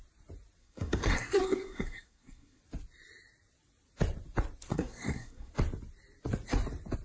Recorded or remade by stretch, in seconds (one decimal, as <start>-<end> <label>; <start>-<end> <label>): 0.0-0.6 recorded; 0.6-2.6 remade; 2.6-4.7 recorded; 4.7-5.5 remade; 5.5-7.0 recorded